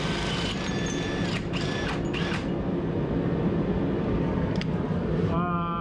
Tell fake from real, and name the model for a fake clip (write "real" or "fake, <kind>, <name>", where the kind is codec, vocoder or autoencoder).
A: real